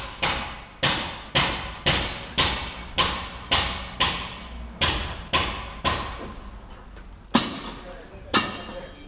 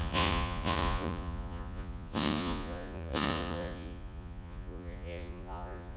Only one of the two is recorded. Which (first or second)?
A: first